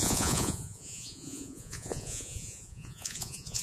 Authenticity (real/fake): fake